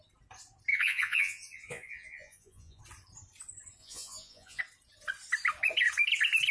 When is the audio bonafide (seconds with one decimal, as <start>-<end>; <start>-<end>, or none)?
0.0-0.7; 2.8-3.8; 4.6-6.5